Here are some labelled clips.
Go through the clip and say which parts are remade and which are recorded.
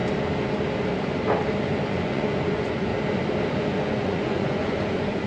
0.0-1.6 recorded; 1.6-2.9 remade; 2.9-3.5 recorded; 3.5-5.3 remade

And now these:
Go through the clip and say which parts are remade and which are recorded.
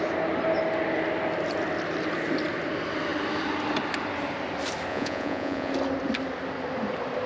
0.0-4.9 recorded; 4.9-5.7 remade; 5.7-7.3 recorded